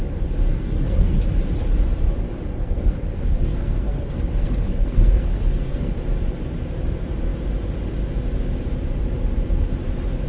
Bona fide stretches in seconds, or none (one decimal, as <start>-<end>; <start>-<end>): 0.0-0.5; 1.2-2.6; 5.9-10.3